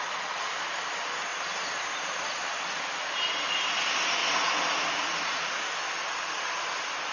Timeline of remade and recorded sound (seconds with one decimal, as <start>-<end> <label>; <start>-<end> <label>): 0.0-4.2 recorded; 4.2-5.5 remade; 5.5-7.1 recorded

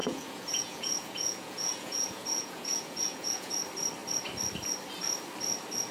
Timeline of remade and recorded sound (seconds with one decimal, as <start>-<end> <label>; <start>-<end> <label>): 0.0-3.5 remade; 3.5-5.9 recorded

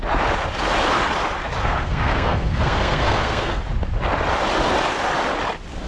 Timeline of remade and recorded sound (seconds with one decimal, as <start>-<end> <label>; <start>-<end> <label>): 0.0-1.6 recorded; 1.6-3.6 remade; 3.6-5.9 recorded

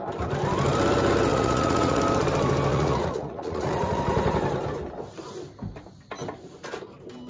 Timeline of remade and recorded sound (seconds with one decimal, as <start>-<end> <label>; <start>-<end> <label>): 0.0-1.3 recorded; 1.3-2.0 remade; 2.0-2.7 recorded; 2.7-4.0 remade; 4.0-7.3 recorded

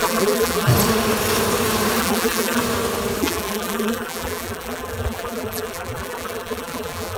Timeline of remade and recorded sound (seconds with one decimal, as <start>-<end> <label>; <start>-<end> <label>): 0.0-0.7 remade; 0.7-2.0 recorded; 2.0-2.6 remade; 2.6-3.2 recorded; 3.2-7.2 remade

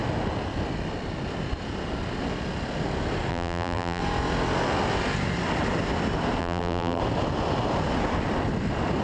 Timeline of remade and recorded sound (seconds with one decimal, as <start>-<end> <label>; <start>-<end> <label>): 0.0-3.3 recorded; 3.3-4.0 remade; 4.0-6.4 recorded; 6.4-7.0 remade; 7.0-9.0 recorded

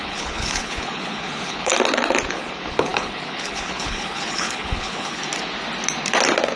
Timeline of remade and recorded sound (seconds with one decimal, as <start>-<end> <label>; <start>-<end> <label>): 0.0-1.7 remade; 1.7-2.3 recorded; 2.3-5.2 remade; 5.2-6.6 recorded